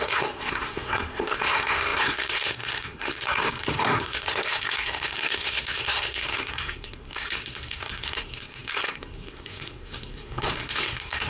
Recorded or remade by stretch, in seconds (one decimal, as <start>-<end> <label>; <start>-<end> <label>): 0.0-11.3 remade